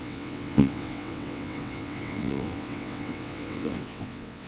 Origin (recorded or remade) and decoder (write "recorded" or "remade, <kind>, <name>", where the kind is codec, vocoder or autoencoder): remade, vocoder, WaveNeXt